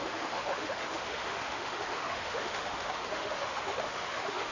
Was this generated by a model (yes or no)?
yes